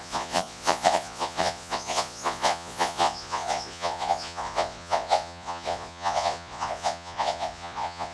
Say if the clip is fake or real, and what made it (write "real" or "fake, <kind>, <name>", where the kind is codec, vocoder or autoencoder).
fake, vocoder, Vocos